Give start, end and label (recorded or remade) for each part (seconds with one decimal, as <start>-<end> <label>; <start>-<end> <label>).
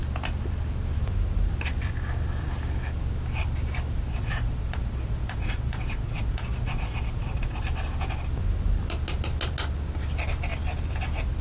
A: 0.0-4.1 recorded; 4.1-7.6 remade; 7.6-11.4 recorded